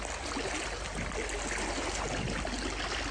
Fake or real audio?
real